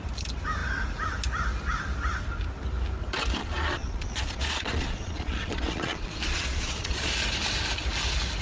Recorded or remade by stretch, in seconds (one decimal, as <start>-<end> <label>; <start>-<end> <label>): 0.0-3.4 recorded; 3.4-7.1 remade; 7.1-8.4 recorded